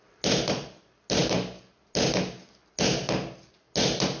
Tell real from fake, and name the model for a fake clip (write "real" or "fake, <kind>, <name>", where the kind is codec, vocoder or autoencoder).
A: real